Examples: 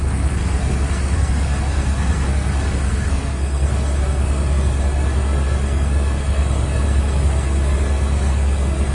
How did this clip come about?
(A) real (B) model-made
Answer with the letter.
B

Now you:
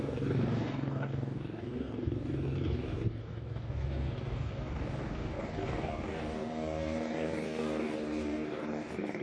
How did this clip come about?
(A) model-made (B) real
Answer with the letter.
A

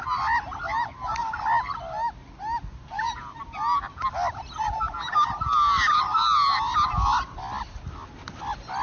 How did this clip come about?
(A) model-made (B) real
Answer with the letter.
B